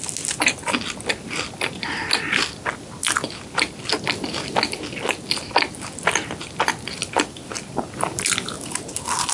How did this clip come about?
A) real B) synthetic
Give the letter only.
A